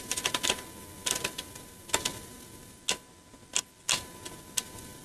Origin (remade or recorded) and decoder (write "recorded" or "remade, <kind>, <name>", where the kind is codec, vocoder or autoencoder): recorded